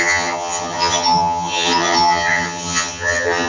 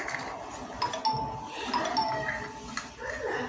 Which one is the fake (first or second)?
first